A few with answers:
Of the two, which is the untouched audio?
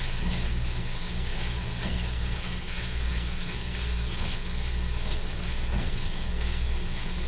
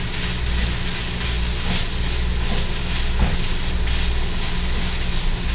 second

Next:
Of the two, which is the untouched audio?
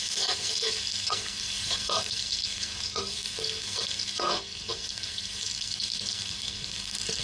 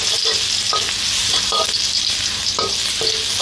second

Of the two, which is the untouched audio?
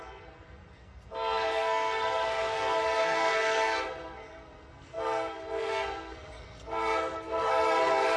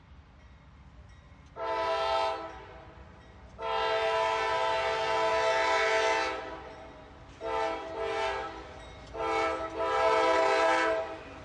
second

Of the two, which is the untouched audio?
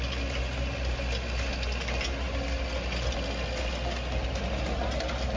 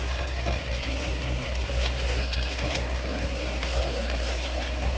first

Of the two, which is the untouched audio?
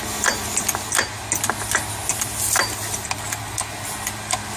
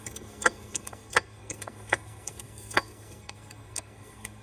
first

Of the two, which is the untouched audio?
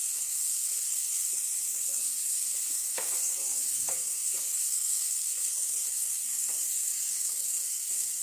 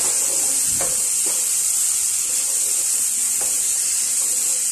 second